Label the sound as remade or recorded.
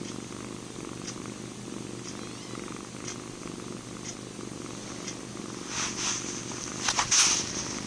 recorded